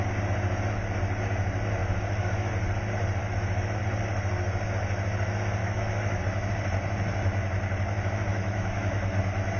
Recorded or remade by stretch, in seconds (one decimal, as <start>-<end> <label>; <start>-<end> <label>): 0.0-1.8 recorded; 1.8-2.5 remade; 2.5-3.2 recorded; 3.2-3.8 remade; 3.8-5.6 recorded; 5.6-6.2 remade; 6.2-8.3 recorded; 8.3-9.2 remade; 9.2-9.6 recorded